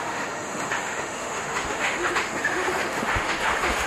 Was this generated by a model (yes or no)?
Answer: yes